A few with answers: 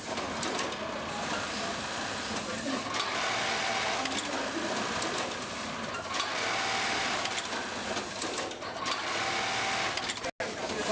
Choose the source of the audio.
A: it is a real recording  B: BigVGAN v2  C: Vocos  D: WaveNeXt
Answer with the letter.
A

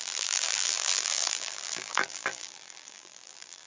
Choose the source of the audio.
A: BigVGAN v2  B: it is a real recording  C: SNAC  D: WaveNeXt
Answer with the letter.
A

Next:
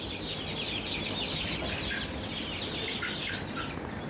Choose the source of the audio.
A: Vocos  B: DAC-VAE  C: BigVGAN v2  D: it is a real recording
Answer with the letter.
D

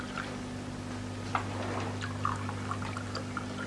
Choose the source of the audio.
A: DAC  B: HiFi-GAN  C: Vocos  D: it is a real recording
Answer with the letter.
D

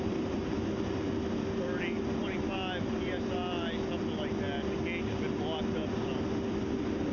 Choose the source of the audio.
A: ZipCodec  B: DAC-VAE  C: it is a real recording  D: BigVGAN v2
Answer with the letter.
C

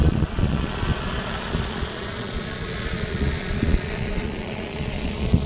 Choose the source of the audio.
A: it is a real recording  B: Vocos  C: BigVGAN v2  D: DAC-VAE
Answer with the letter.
B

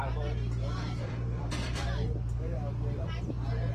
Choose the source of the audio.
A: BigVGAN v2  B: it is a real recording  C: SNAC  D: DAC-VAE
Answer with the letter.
A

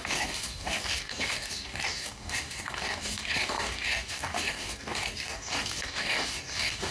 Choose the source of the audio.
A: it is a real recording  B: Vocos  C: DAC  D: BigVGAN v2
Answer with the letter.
C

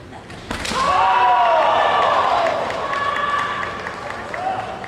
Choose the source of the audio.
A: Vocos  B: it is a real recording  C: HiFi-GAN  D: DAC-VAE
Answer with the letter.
B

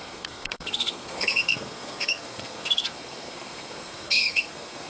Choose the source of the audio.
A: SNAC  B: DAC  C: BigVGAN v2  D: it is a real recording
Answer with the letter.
A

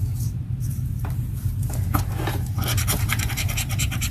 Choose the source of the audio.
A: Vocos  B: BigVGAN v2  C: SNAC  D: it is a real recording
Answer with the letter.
B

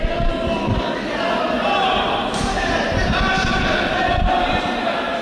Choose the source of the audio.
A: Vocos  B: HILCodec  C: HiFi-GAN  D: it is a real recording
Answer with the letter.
D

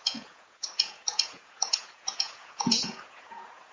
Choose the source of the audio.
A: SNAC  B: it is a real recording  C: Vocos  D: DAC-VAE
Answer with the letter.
C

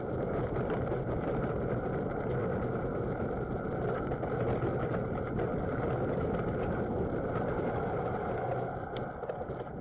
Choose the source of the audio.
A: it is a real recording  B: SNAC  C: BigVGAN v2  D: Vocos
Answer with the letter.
A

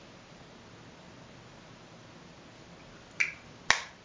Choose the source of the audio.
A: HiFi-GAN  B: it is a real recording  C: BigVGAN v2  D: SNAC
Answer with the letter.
B